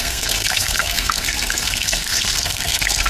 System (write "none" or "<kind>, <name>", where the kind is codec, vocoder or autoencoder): codec, SNAC